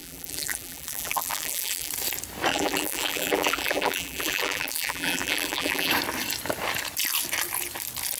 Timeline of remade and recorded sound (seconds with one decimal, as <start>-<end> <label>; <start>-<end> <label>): 0.0-1.9 remade; 1.9-2.5 recorded; 2.5-5.9 remade; 5.9-8.2 recorded